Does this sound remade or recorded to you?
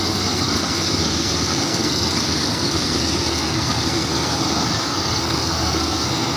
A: remade